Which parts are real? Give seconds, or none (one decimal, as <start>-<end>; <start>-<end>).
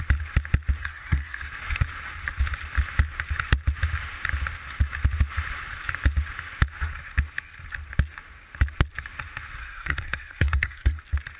0.0-0.8; 1.4-9.6; 11.0-11.4